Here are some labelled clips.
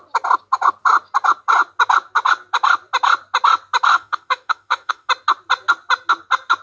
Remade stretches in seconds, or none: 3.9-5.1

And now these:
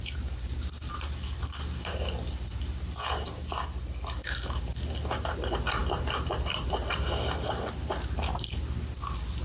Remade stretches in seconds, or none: 5.8-6.6

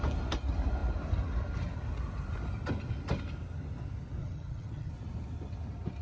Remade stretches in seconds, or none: 4.2-4.9

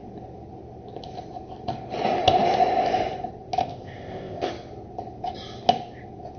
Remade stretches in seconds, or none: 3.6-4.5

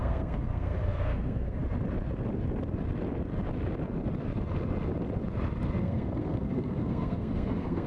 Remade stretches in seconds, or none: 0.0-1.6; 5.8-7.9

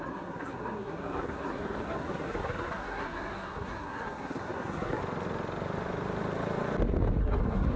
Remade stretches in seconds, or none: 0.0-5.0; 7.2-7.8